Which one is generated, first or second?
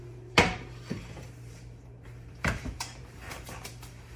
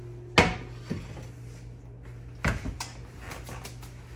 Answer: first